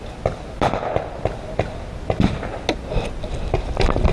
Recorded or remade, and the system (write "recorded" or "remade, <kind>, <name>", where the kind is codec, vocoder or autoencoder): recorded